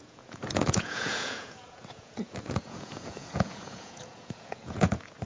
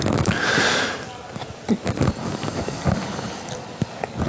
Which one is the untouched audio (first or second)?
second